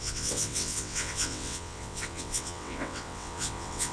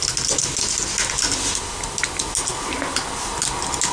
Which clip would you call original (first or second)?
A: second